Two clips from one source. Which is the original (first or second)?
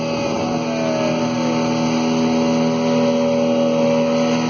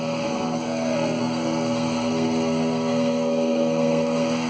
first